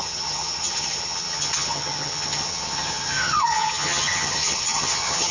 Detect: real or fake fake